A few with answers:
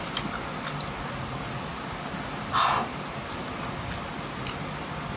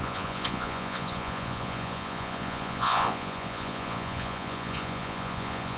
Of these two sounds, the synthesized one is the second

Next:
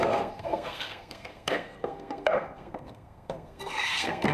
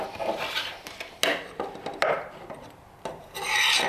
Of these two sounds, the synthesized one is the first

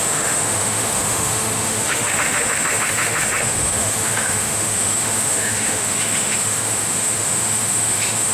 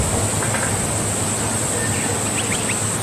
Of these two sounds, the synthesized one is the first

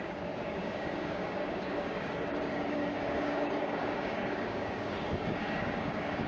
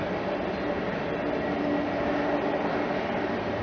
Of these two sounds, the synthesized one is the first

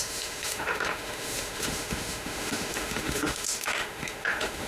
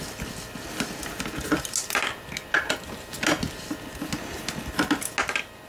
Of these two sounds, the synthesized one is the first